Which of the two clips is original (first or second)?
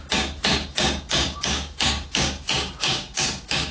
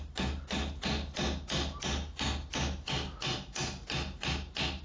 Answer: second